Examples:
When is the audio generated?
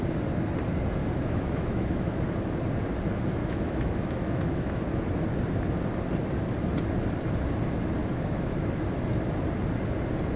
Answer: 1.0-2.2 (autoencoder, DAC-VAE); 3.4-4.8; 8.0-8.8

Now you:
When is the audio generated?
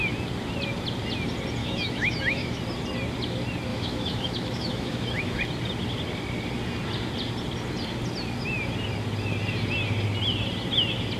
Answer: 1.6-2.6 (autoencoder, DAC-VAE); 3.7-5.4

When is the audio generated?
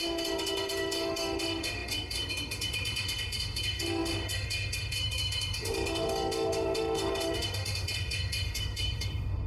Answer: 0.0-9.5 (autoencoder, DAC-VAE)